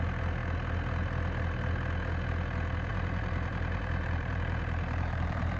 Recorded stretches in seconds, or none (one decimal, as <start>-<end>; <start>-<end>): 0.0-2.9